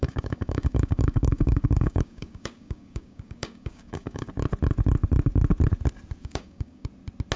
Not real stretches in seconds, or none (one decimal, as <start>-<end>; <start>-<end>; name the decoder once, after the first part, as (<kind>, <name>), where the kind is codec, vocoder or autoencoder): 0.0-4.3 (codec, DAC); 6.2-6.9